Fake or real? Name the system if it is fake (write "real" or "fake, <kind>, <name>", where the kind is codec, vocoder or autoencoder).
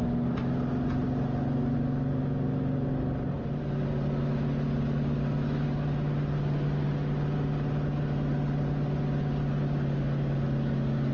real